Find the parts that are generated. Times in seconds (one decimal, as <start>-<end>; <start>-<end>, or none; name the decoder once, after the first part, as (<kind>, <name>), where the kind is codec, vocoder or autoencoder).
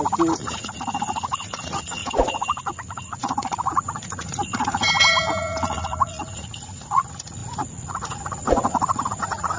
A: 0.0-9.6 (vocoder, Vocos)